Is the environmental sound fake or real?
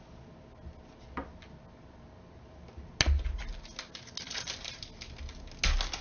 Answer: real